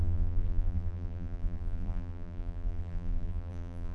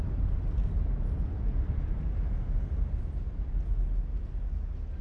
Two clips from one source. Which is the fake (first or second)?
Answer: first